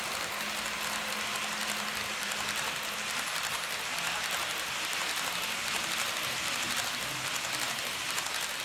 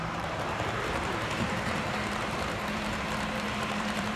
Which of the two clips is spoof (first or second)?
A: second